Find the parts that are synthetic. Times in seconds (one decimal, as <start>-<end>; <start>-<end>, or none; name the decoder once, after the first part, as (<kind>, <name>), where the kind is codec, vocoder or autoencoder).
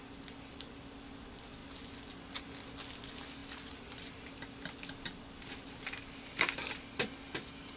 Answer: none